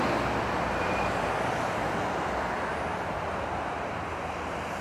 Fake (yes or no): no